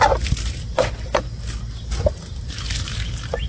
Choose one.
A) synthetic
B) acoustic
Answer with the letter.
B